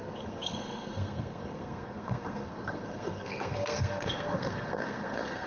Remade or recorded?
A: remade